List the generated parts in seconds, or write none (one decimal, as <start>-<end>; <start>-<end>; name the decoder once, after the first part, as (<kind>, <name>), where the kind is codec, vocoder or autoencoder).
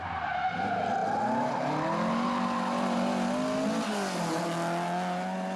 none